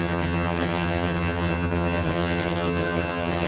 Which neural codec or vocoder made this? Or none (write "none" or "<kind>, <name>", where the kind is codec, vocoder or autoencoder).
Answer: vocoder, HiFi-GAN